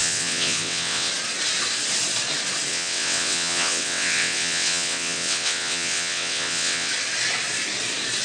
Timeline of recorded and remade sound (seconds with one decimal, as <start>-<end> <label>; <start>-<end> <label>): 0.0-1.1 remade; 1.1-2.7 recorded; 2.7-6.9 remade; 6.9-8.2 recorded